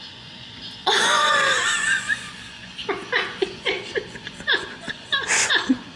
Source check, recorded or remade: remade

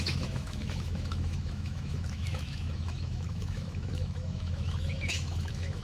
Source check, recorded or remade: remade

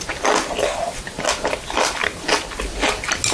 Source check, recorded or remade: recorded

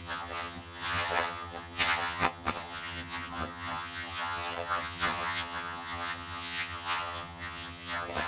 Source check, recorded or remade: remade